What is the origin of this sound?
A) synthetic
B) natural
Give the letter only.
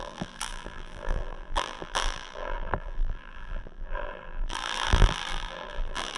A